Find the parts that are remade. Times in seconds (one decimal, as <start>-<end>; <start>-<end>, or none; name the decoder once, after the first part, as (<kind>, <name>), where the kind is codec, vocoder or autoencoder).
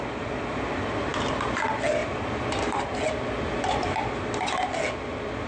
none